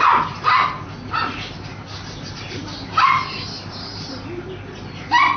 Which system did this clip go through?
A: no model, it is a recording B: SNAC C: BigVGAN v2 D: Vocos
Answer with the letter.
A